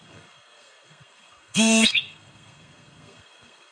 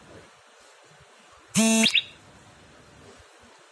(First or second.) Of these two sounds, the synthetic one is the first